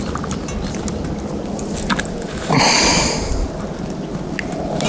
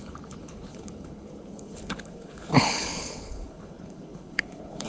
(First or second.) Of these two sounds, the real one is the first